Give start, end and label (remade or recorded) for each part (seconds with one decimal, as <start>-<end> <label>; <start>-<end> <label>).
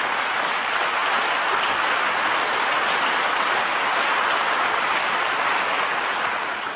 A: 0.0-6.8 recorded